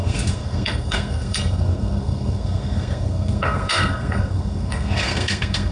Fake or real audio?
fake